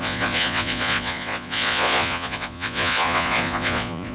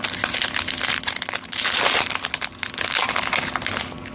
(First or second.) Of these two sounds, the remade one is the first